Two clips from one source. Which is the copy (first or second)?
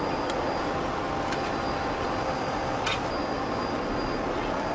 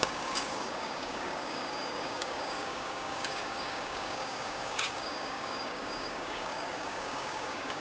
second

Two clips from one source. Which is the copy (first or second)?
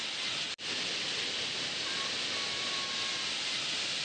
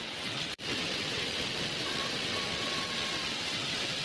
second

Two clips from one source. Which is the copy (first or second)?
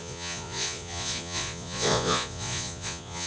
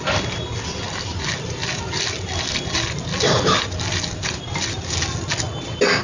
first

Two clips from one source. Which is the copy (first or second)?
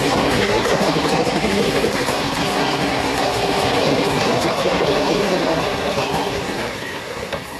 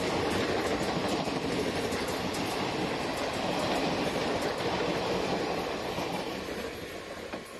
first